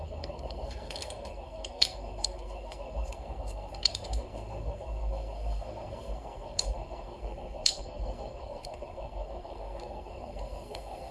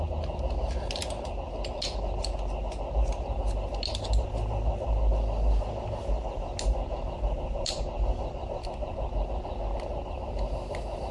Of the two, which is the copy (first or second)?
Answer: first